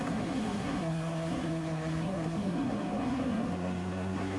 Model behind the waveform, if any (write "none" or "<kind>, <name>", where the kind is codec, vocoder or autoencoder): codec, SNAC